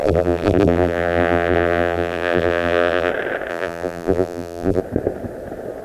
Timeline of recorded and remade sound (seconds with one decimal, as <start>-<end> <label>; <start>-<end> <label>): 0.0-3.1 remade; 3.1-3.5 recorded; 3.5-4.8 remade; 4.8-5.8 recorded